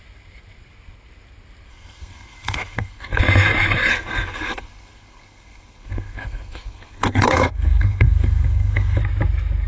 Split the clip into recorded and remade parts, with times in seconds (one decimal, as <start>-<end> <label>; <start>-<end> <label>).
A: 0.0-1.7 recorded; 1.7-3.2 remade; 3.2-3.9 recorded; 3.9-9.0 remade; 9.0-9.7 recorded